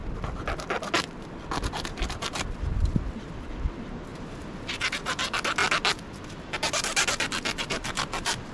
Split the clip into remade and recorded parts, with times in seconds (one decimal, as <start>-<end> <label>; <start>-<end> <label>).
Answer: 0.0-4.1 recorded; 4.1-4.6 remade; 4.6-5.6 recorded; 5.6-8.5 remade